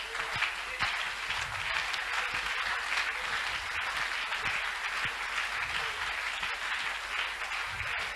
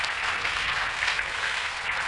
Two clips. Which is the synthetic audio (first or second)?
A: second